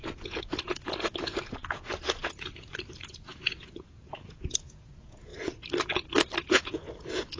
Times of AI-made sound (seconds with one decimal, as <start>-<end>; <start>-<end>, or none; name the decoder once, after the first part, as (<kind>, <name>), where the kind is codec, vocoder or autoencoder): 0.0-5.3 (vocoder, Vocos); 6.4-7.4

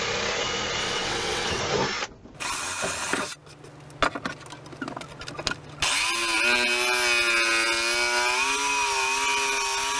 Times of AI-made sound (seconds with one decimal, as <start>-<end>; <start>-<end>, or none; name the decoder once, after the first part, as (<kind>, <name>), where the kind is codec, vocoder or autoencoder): 0.8-1.6 (vocoder, WaveNeXt)

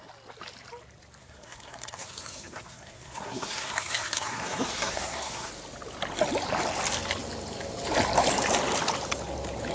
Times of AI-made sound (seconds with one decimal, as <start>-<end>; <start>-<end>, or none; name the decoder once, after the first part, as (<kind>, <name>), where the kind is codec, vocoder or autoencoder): 1.2-5.5 (codec, SNAC)

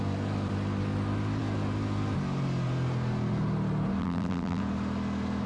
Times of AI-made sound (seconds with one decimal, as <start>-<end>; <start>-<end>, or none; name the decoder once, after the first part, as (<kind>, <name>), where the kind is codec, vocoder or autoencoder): 4.0-4.6 (vocoder, BigVGAN v2)

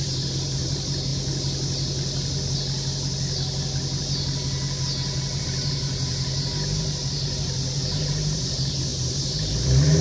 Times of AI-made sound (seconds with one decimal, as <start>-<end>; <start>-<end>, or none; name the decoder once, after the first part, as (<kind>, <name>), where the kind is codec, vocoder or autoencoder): 0.0-1.1 (vocoder, BigVGAN v2); 5.4-10.0

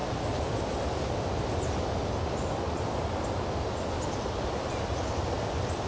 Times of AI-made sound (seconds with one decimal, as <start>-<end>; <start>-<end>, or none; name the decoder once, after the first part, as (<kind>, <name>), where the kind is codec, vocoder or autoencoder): none

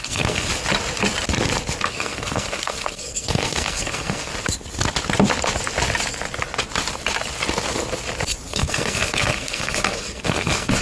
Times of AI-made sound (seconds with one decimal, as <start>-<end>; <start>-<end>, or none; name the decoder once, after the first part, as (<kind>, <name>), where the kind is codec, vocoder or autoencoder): 0.0-0.5 (codec, SNAC); 1.9-4.3; 8.5-10.8